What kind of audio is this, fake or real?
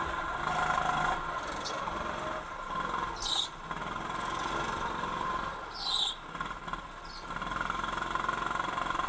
real